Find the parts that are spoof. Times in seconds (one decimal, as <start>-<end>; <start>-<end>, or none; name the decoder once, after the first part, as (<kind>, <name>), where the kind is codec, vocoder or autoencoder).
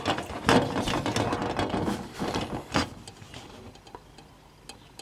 none